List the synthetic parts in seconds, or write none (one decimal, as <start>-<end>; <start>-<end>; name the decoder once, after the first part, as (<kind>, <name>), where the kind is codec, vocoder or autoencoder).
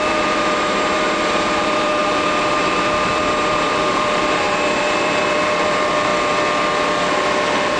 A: 0.0-6.1 (vocoder, BigVGAN v2)